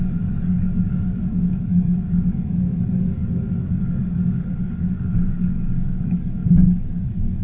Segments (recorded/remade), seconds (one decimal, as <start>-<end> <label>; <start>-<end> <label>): 0.0-7.4 remade